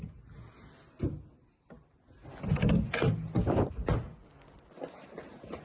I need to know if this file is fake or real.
real